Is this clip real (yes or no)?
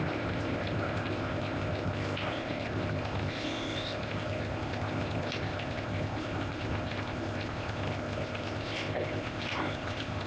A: no